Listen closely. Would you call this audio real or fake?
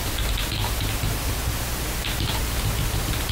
real